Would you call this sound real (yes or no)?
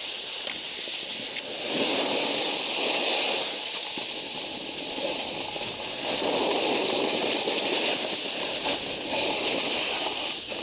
yes